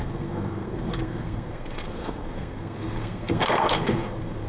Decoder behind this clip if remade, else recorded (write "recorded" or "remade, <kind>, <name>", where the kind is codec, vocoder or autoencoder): remade, codec, SNAC